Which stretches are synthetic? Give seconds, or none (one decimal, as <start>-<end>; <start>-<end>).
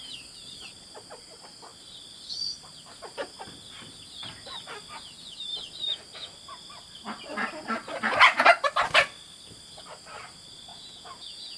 10.7-11.6